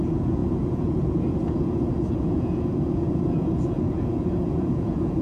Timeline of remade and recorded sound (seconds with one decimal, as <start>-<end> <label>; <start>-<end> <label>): 0.0-5.2 remade